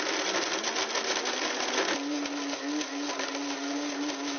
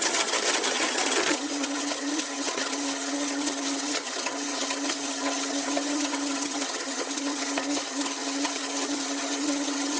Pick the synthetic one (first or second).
second